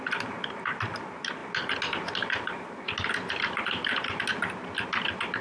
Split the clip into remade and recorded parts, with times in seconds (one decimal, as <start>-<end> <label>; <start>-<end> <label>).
0.0-5.4 recorded